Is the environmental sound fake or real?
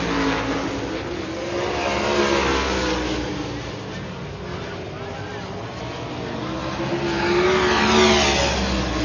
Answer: real